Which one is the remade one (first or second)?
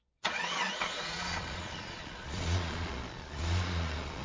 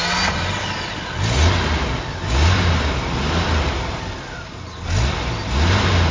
first